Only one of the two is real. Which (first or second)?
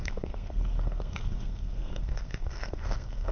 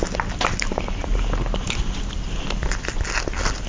second